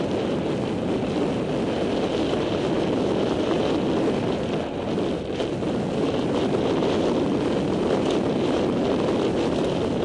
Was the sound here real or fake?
real